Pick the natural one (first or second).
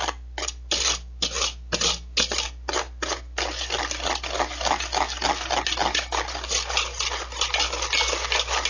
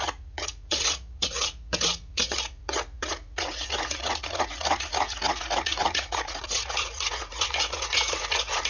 first